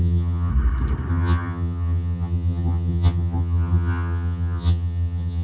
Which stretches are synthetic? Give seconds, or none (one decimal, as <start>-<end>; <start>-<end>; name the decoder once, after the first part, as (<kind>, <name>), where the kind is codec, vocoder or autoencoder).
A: 0.0-0.5 (vocoder, HiFi-GAN); 1.1-5.4